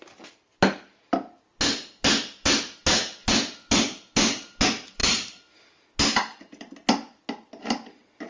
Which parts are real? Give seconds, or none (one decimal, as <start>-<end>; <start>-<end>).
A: 0.0-5.0; 5.7-8.3

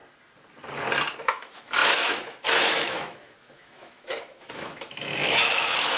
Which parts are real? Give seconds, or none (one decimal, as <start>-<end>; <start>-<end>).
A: 0.0-1.2

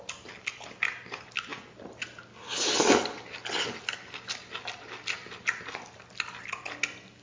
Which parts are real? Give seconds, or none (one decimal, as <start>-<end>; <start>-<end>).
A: 0.0-7.2

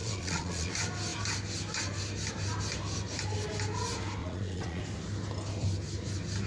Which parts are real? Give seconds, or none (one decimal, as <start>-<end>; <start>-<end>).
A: 0.7-4.2; 4.8-6.5